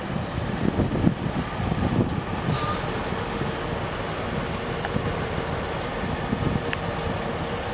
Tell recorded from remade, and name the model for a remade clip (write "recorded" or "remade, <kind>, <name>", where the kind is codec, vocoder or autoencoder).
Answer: recorded